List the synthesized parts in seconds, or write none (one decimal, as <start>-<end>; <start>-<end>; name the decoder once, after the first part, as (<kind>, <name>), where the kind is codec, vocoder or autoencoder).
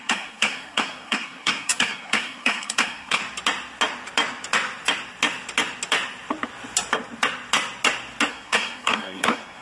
0.0-3.2 (codec, SNAC); 8.3-9.6